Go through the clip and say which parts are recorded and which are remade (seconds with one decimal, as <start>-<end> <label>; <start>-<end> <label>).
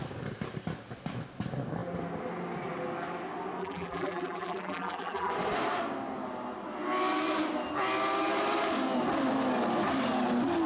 0.0-3.6 recorded; 3.6-5.3 remade; 5.3-10.7 recorded